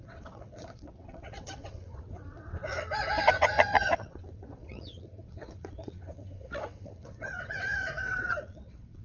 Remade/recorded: remade